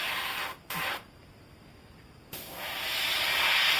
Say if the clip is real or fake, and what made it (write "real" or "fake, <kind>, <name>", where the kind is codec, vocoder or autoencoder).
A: real